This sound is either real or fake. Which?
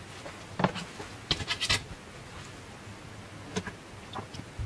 real